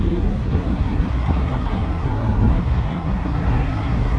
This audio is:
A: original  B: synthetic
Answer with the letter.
B